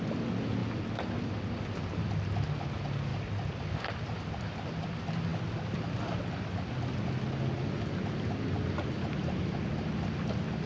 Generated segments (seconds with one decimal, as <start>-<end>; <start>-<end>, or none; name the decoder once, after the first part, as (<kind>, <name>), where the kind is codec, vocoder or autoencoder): none